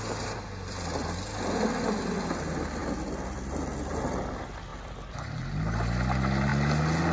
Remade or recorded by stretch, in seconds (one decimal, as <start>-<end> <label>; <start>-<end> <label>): 0.0-2.8 recorded; 2.8-4.3 remade; 4.3-7.1 recorded